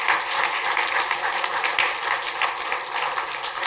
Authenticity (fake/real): real